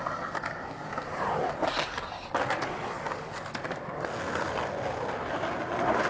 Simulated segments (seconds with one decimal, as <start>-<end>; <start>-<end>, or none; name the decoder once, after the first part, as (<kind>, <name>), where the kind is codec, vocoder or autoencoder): none